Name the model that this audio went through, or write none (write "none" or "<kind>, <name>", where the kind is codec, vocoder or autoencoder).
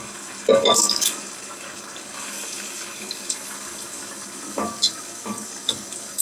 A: codec, DAC